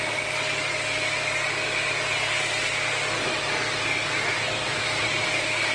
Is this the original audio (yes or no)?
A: yes